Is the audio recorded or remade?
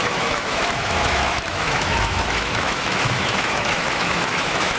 remade